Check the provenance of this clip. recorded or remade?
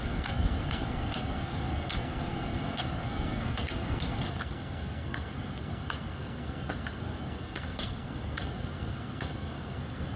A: remade